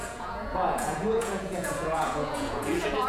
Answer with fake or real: fake